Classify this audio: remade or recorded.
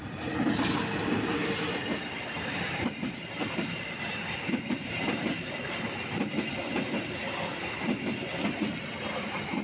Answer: recorded